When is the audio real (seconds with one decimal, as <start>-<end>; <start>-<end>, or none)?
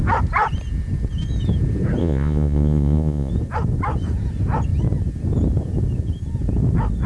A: 0.0-2.0; 3.3-7.1